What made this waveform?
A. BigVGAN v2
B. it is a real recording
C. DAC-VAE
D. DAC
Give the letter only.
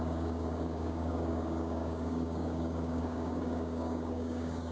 D